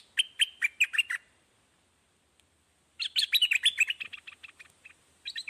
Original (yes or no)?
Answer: yes